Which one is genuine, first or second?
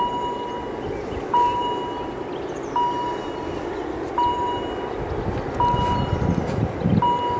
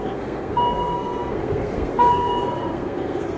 first